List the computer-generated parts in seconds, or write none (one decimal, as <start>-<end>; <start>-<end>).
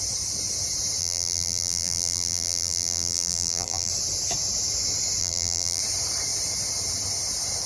1.0-3.9; 5.2-5.8